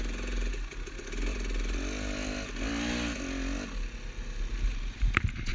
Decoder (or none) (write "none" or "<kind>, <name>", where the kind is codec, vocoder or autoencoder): none